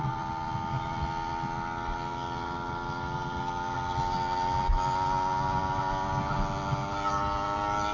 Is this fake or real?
real